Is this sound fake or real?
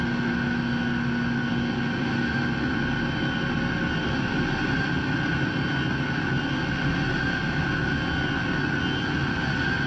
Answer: real